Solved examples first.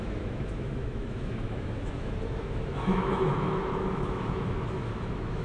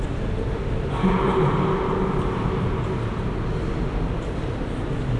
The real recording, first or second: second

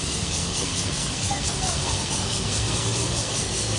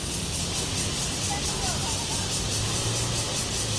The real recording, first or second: second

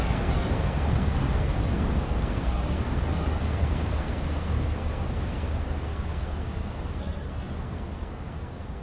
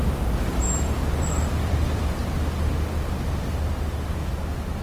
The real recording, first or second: second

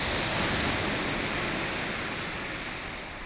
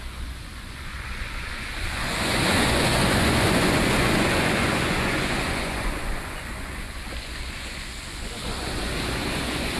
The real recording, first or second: first